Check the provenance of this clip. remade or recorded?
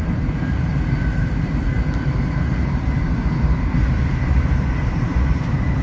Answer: remade